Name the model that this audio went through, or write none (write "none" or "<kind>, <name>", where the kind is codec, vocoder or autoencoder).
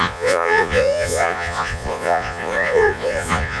vocoder, Vocos